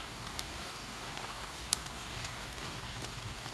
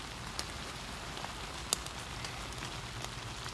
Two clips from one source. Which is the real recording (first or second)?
second